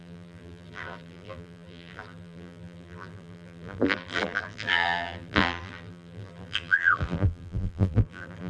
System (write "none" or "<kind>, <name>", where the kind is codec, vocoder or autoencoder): vocoder, BigVGAN v2